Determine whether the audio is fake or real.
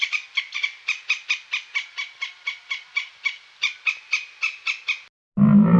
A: real